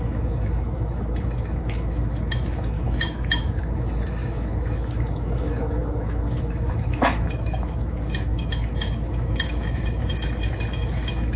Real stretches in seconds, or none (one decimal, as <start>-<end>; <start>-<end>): none